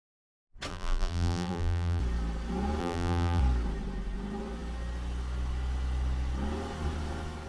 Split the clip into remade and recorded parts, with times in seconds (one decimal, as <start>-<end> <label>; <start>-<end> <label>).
0.0-0.7 recorded; 0.7-2.0 remade; 2.0-2.8 recorded; 2.8-3.4 remade; 3.4-7.5 recorded